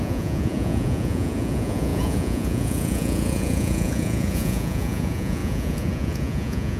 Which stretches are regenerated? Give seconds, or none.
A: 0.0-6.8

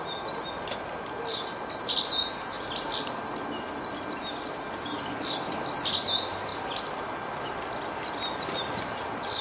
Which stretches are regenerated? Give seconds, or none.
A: none